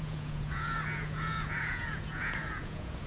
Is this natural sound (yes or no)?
no